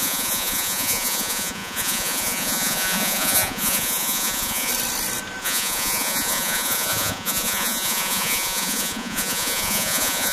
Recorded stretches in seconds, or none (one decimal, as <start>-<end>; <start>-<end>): 4.7-5.4